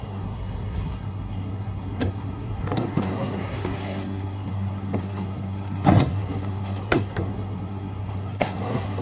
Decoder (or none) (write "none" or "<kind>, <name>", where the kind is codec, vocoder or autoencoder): codec, SNAC